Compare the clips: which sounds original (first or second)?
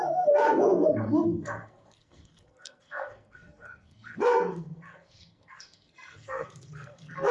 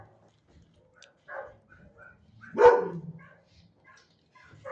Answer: second